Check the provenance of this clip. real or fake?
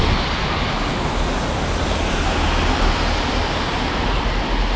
real